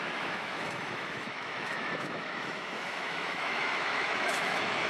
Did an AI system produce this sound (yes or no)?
yes